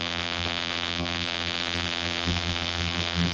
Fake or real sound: fake